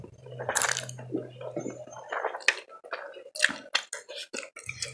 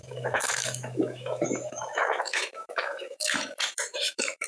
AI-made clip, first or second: second